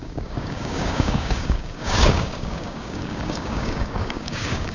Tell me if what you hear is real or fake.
fake